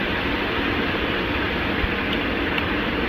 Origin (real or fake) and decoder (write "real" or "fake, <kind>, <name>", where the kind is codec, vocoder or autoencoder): real